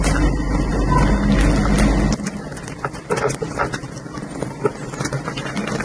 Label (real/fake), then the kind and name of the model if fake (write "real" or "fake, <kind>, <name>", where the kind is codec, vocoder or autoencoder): real